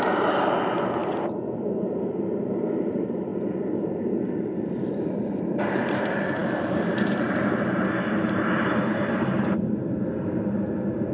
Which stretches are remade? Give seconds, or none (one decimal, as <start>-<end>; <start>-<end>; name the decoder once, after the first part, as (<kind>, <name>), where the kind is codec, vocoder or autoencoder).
0.0-1.0 (vocoder, BigVGAN v2); 1.7-11.1